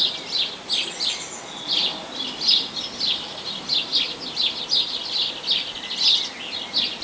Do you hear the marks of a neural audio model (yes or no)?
no